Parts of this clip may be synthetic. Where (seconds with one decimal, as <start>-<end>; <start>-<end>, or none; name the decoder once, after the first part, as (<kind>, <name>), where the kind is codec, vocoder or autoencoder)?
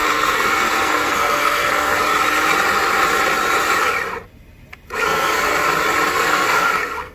0.0-2.1 (codec, SNAC); 5.0-5.5; 6.1-7.1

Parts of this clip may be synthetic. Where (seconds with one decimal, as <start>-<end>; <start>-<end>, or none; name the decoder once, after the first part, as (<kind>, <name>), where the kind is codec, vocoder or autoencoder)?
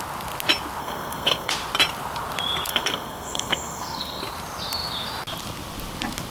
0.8-1.5 (codec, SNAC); 2.7-4.2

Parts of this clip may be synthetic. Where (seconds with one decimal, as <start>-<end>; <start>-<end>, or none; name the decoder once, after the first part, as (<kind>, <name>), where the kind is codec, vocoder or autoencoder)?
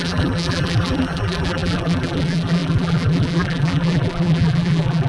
0.0-5.1 (vocoder, BigVGAN v2)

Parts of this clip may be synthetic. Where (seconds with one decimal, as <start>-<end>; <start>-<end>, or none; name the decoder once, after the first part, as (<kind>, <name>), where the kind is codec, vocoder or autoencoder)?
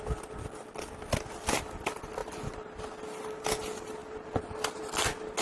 none